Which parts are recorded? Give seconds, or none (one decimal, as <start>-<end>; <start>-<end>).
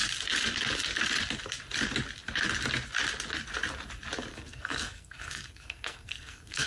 0.0-4.3